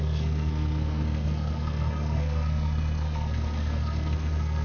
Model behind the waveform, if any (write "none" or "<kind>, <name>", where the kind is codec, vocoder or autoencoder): codec, SNAC